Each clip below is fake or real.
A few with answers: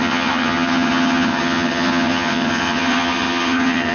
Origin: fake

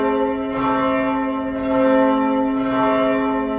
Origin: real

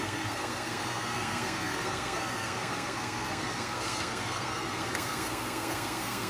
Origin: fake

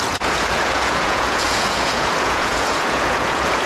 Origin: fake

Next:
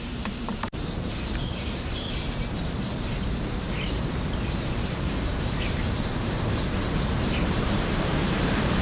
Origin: fake